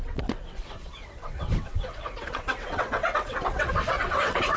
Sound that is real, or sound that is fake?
fake